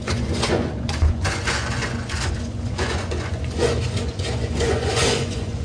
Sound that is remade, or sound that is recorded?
remade